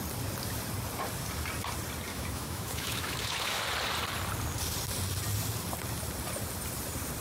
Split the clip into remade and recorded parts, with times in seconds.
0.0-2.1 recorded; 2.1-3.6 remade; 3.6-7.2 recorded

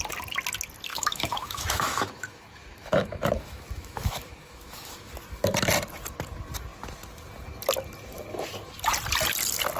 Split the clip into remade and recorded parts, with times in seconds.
0.0-0.9 recorded; 0.9-5.1 remade; 5.1-9.8 recorded

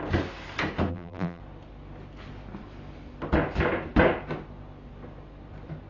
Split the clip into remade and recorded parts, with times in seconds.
0.0-0.9 recorded; 0.9-1.4 remade; 1.4-5.9 recorded

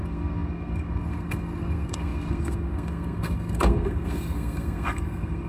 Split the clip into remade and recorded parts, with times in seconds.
0.0-5.5 remade